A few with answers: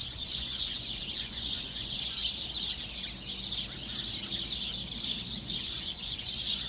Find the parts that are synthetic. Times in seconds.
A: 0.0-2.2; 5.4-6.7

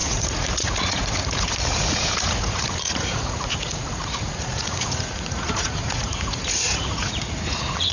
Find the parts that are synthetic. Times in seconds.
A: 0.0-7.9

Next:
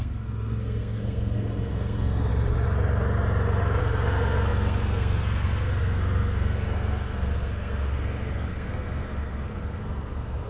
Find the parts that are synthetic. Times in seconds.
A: 0.0-2.3; 3.8-10.5

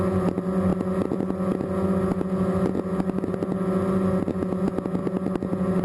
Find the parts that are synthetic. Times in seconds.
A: none

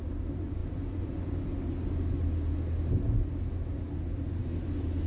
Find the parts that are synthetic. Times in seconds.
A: none

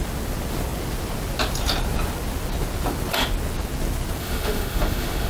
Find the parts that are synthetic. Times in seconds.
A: 4.2-5.3

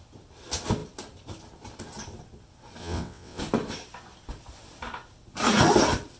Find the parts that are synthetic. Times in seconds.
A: 2.8-3.4

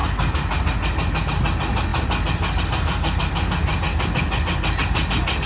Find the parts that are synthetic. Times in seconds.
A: none